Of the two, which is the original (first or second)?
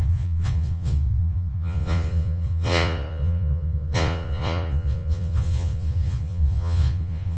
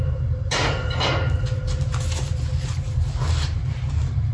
second